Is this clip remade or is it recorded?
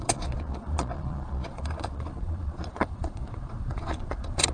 remade